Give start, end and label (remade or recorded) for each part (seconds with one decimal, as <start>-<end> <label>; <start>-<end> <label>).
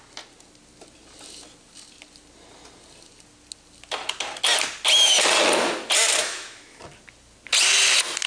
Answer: 0.0-6.2 recorded; 6.2-6.8 remade; 6.8-8.3 recorded